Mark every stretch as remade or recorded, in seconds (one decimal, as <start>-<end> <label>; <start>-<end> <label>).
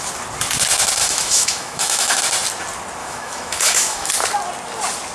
0.0-1.0 recorded; 1.0-2.2 remade; 2.2-3.0 recorded; 3.0-4.1 remade; 4.1-5.1 recorded